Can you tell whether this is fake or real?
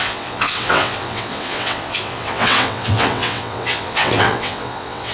fake